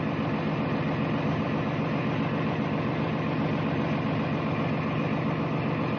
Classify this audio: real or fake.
real